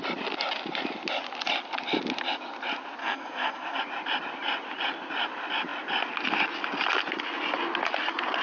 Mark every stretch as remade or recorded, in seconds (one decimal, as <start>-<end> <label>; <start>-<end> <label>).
0.0-3.0 recorded; 3.0-3.8 remade; 3.8-8.4 recorded